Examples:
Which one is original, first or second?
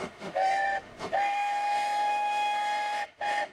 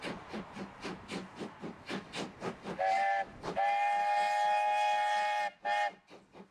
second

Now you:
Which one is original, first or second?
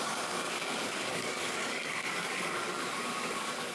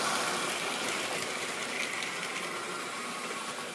second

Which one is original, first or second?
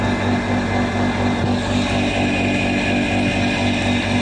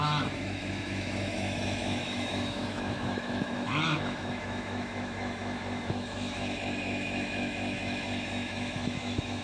first